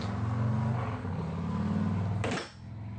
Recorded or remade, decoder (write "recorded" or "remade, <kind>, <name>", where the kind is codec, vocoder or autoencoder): recorded